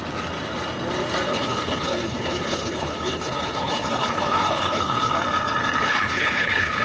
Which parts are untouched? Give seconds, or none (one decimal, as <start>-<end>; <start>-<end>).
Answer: 0.0-1.3; 5.1-5.8